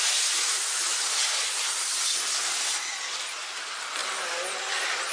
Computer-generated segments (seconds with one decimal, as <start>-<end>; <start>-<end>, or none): none